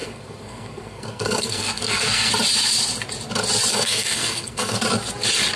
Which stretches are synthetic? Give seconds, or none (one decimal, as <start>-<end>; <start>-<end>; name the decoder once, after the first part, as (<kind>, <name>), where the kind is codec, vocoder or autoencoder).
0.0-2.3 (codec, SNAC); 3.7-4.8